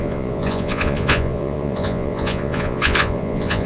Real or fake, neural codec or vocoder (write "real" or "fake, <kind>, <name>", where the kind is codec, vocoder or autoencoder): fake, vocoder, Vocos